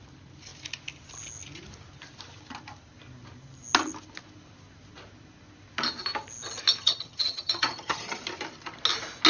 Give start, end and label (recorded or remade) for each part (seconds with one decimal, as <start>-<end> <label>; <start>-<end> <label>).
0.0-6.8 recorded; 6.8-8.2 remade; 8.2-9.3 recorded